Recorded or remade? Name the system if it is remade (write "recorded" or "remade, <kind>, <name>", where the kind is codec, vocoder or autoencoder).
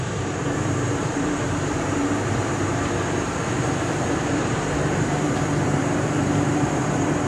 remade, vocoder, BigVGAN v2